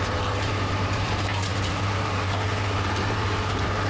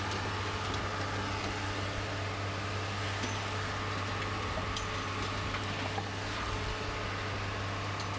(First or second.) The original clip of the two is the second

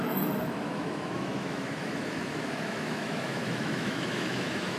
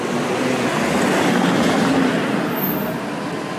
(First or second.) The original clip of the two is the second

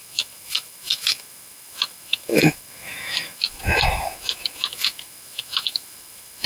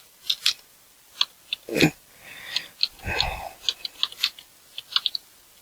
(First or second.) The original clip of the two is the second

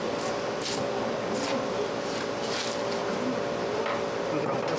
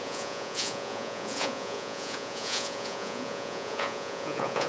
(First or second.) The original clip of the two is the first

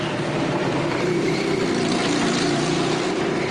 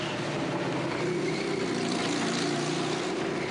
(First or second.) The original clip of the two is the second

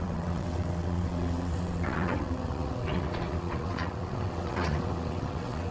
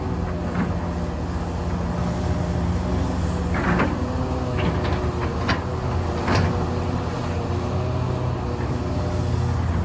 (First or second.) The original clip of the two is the second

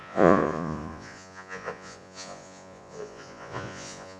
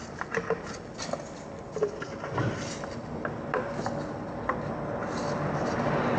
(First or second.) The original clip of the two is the second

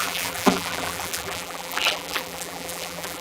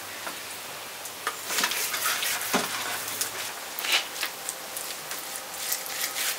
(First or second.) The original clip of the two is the second